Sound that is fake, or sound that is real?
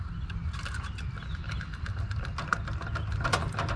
real